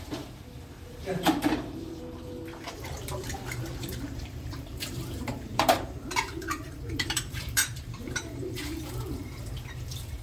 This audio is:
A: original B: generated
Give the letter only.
B